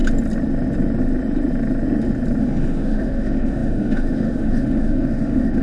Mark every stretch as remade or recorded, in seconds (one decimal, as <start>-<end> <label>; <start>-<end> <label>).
0.0-2.4 recorded; 2.4-5.6 remade

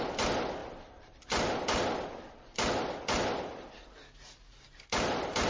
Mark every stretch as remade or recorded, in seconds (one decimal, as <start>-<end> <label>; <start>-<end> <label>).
0.0-5.5 recorded

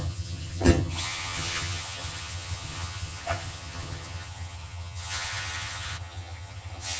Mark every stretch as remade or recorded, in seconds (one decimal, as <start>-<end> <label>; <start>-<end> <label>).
0.0-7.0 remade

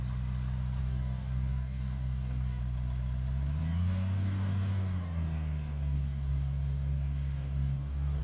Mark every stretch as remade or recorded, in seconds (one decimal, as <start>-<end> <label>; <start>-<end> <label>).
0.0-0.8 recorded; 0.8-2.6 remade; 2.6-3.6 recorded; 3.6-8.2 remade

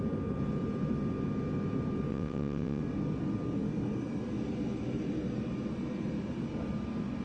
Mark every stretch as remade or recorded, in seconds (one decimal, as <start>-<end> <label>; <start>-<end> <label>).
0.0-2.1 recorded; 2.1-2.8 remade; 2.8-7.2 recorded

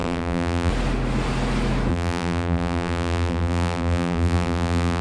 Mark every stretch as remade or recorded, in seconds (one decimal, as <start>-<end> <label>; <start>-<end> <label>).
0.0-0.7 remade; 0.7-1.9 recorded; 1.9-5.0 remade